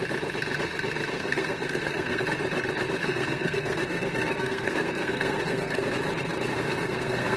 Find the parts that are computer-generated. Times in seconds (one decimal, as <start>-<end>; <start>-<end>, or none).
1.1-2.2; 3.0-5.9; 6.5-7.4

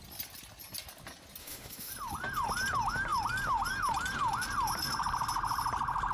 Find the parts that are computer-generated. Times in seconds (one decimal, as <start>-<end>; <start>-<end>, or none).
1.4-1.9

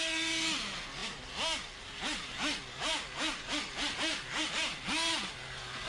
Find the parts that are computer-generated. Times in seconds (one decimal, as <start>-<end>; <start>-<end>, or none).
none

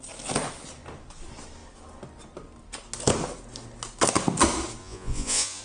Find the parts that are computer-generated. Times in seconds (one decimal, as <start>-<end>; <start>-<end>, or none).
4.8-5.6

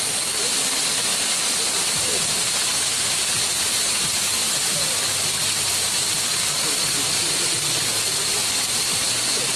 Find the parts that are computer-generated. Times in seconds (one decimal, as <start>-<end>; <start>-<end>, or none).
none

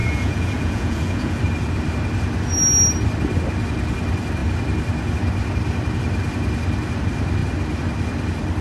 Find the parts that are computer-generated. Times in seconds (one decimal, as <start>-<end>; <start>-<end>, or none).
0.0-1.4

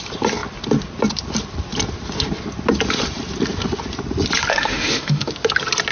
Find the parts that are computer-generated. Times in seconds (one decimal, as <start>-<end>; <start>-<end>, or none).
4.5-5.3

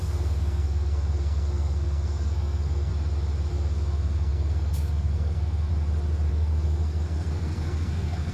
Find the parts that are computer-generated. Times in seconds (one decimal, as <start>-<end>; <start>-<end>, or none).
0.0-2.9; 3.5-5.7; 6.3-8.3